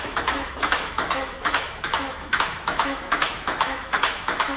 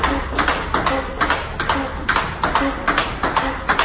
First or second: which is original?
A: second